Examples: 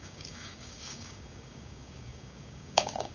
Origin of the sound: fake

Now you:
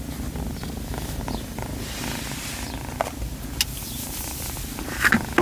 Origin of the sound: real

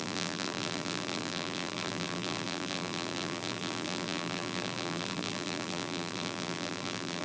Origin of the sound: fake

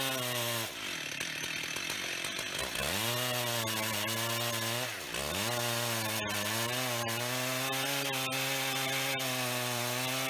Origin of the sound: real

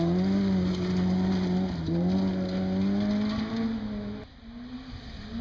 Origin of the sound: real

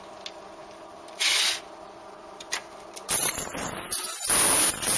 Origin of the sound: real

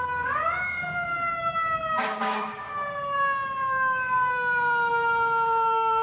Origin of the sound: fake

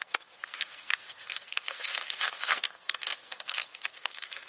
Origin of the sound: fake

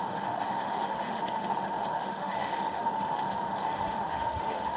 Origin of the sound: fake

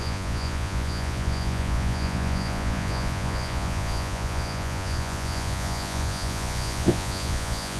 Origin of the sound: fake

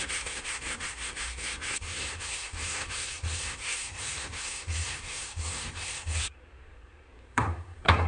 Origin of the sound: fake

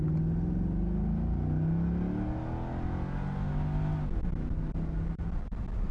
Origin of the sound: real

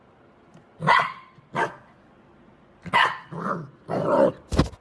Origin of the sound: real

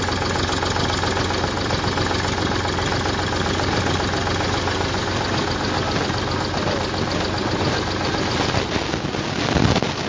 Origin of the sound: real